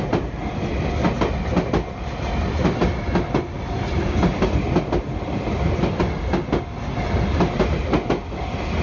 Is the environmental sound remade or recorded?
recorded